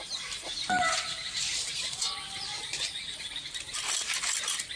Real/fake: real